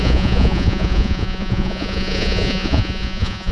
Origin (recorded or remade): remade